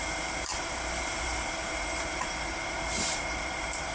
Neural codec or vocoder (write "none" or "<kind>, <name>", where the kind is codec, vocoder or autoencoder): vocoder, BigVGAN v2